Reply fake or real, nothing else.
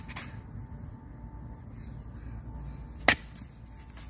real